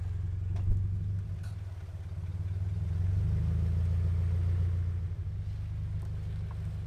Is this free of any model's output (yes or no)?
yes